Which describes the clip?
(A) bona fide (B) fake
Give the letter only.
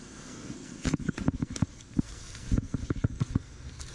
B